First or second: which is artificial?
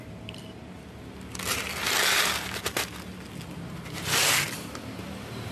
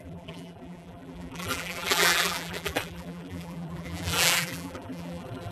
second